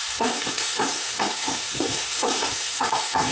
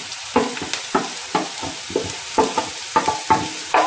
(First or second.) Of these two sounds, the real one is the second